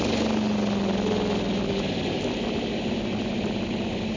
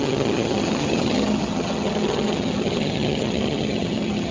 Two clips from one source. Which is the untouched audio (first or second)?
first